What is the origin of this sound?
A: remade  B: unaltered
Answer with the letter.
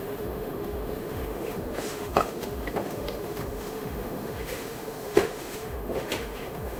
A